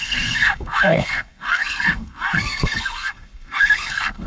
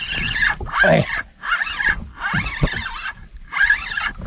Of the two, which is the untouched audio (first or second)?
second